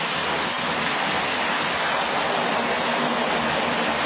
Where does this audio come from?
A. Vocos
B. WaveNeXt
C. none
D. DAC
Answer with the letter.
C